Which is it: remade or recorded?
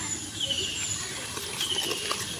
recorded